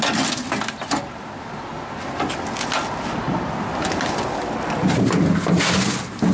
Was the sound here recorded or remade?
recorded